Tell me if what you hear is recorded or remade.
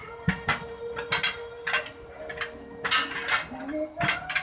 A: recorded